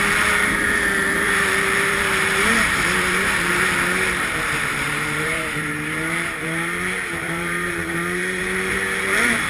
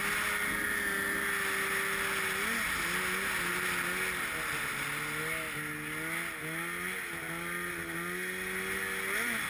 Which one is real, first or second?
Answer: second